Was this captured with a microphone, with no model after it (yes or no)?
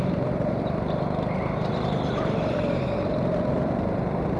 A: no